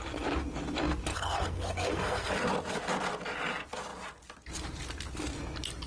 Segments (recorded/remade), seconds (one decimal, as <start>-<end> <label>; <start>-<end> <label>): 0.0-1.1 recorded; 1.1-2.3 remade; 2.3-5.9 recorded